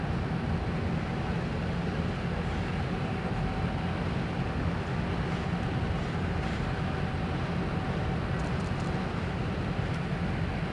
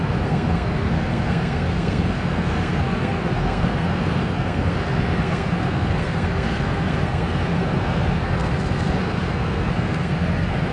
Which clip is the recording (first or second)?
first